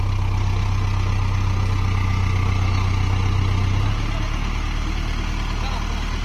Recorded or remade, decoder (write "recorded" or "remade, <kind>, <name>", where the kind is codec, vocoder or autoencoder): recorded